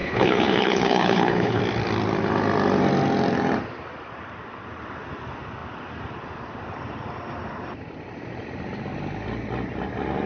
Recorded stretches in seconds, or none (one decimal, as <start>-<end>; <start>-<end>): 1.6-10.3